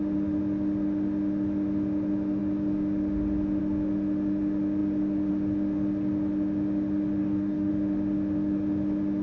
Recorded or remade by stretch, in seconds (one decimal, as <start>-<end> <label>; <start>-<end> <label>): 0.0-7.2 recorded; 7.2-7.7 remade; 7.7-9.2 recorded